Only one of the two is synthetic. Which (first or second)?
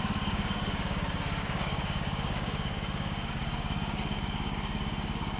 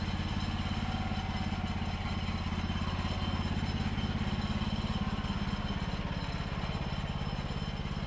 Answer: first